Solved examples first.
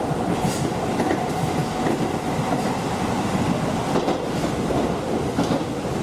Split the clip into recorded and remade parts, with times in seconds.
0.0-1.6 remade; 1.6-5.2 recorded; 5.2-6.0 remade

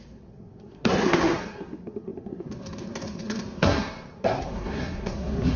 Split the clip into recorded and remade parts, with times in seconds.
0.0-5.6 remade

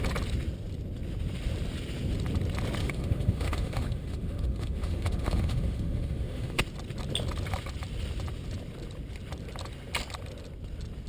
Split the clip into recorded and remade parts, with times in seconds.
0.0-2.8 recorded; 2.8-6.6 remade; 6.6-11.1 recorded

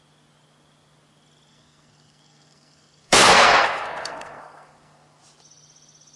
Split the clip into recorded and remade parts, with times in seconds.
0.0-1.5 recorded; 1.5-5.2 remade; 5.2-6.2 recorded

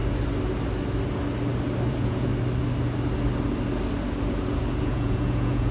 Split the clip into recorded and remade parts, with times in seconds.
0.0-1.9 recorded; 1.9-2.3 remade; 2.3-4.8 recorded; 4.8-5.7 remade